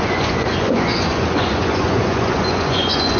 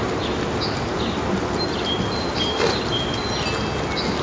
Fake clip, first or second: first